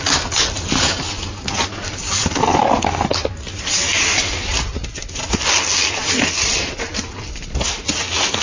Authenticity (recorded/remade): recorded